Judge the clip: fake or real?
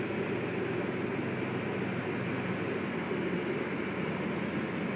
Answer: real